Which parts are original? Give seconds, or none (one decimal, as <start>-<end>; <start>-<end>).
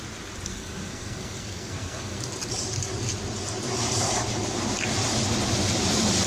0.0-0.5; 2.2-6.3